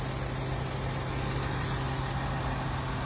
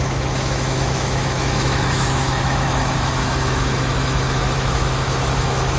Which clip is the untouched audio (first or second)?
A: first